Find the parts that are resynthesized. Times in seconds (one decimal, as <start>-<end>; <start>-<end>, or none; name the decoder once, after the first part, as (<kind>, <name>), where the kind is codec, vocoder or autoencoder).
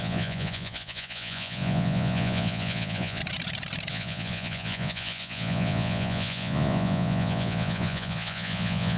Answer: 0.0-3.2 (vocoder, Vocos); 3.9-9.0